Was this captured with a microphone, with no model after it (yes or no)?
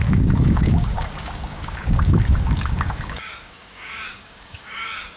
no